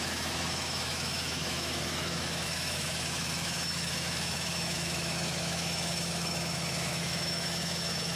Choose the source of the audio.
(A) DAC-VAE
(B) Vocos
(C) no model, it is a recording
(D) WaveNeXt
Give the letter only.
A